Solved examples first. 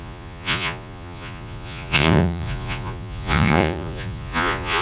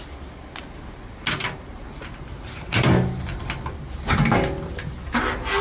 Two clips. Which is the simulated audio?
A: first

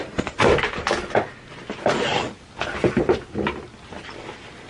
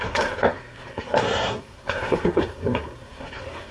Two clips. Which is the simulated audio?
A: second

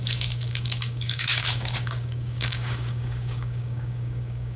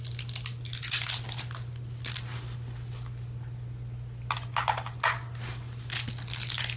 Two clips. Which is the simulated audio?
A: first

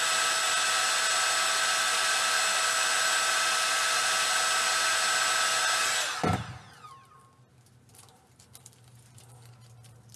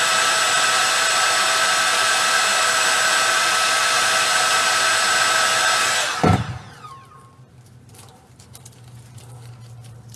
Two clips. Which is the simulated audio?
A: second